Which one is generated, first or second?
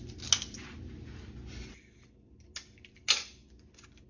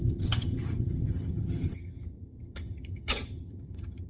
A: second